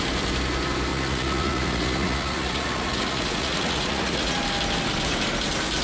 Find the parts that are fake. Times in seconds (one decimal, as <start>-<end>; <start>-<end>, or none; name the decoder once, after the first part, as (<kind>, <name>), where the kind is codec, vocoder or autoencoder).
0.9-4.4 (vocoder, Vocos)

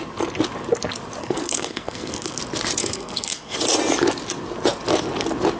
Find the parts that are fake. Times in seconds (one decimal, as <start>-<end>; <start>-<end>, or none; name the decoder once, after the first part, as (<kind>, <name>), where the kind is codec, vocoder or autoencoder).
1.2-2.4 (codec, SNAC); 2.8-3.6

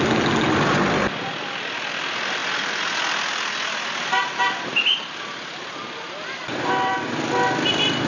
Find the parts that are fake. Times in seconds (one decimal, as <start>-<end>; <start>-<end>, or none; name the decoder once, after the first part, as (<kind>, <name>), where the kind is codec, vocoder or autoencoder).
none

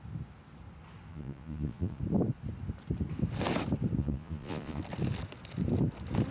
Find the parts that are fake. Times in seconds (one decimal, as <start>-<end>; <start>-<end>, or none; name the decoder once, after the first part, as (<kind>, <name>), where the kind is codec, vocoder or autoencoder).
1.1-2.0 (vocoder, Vocos); 4.0-4.8